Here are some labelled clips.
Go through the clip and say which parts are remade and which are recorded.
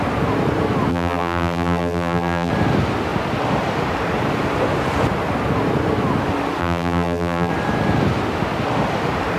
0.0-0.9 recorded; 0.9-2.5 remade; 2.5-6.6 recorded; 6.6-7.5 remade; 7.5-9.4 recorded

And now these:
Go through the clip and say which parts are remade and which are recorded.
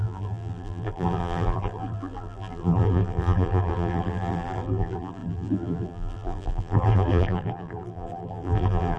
0.0-9.0 remade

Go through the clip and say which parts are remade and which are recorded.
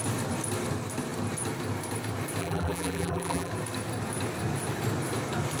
0.0-2.4 recorded; 2.4-3.5 remade; 3.5-5.6 recorded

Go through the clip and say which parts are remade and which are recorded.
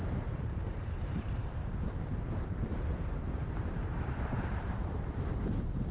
0.0-5.9 remade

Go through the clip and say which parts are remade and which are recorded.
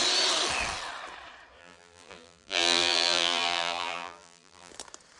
0.0-1.6 recorded; 1.6-4.7 remade; 4.7-5.2 recorded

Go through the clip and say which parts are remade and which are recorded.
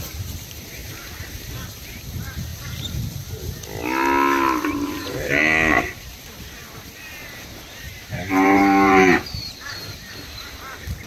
0.0-2.5 remade; 2.5-5.7 recorded; 5.7-11.1 remade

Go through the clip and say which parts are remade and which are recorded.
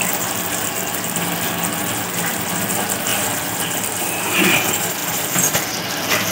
0.0-3.1 recorded; 3.1-4.4 remade; 4.4-5.0 recorded; 5.0-5.5 remade; 5.5-6.3 recorded